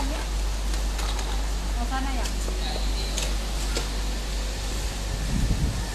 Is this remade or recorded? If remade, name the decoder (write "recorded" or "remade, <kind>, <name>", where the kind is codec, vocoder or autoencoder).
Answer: recorded